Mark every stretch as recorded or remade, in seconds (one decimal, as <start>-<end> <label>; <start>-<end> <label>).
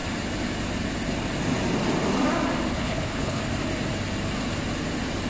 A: 0.0-2.7 recorded; 2.7-3.4 remade; 3.4-5.3 recorded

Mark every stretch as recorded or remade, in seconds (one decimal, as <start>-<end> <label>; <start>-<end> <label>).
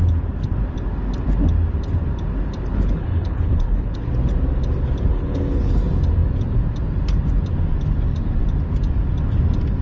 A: 0.0-2.7 recorded; 2.7-4.1 remade; 4.1-5.1 recorded; 5.1-5.7 remade; 5.7-9.8 recorded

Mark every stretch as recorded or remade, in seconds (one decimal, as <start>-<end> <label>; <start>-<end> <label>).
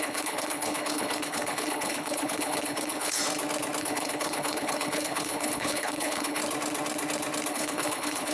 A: 0.0-3.2 remade; 3.2-3.8 recorded; 3.8-6.4 remade; 6.4-7.5 recorded; 7.5-8.3 remade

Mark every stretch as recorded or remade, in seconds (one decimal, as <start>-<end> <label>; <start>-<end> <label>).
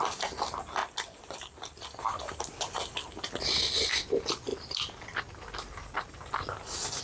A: 0.0-7.0 recorded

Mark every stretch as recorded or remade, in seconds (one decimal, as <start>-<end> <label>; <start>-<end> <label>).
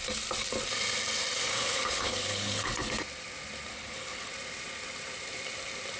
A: 0.0-1.5 recorded; 1.5-2.9 remade; 2.9-3.7 recorded; 3.7-4.3 remade; 4.3-6.0 recorded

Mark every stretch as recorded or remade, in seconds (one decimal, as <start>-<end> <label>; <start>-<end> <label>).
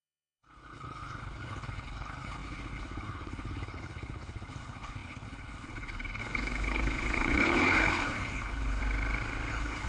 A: 0.0-8.8 remade; 8.8-9.5 recorded; 9.5-9.9 remade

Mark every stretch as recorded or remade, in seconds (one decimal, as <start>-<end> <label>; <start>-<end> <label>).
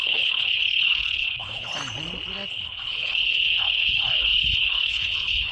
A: 0.0-1.8 remade; 1.8-2.5 recorded; 2.5-5.5 remade